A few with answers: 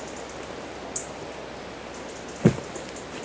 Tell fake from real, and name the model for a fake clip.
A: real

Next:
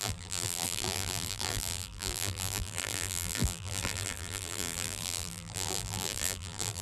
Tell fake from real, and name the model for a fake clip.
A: fake, vocoder, BigVGAN v2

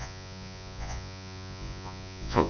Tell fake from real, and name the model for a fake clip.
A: fake, vocoder, Vocos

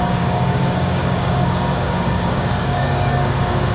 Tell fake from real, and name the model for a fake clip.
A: fake, codec, DAC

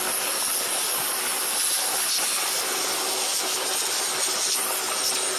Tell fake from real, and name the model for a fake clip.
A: real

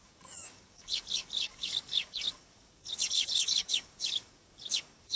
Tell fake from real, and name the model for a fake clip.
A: fake, codec, DAC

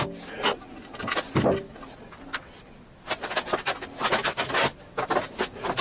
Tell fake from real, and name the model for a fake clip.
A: real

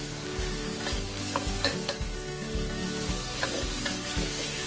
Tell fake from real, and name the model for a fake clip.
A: fake, codec, DAC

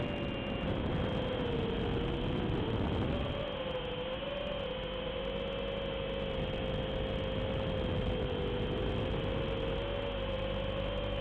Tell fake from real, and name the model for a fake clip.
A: real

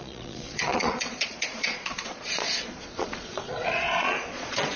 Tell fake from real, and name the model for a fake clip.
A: fake, vocoder, Vocos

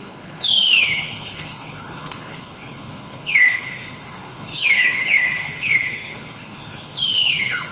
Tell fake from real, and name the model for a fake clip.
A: fake, codec, HILCodec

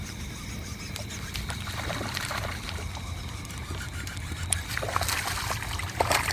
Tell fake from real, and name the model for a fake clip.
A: fake, vocoder, BigVGAN v2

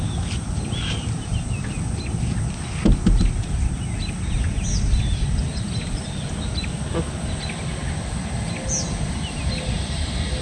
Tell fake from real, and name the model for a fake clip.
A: real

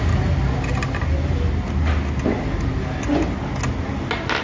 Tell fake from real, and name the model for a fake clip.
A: real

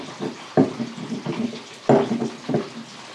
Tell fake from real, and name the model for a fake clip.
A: real